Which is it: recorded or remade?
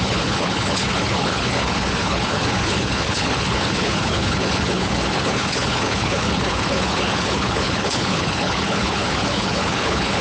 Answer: remade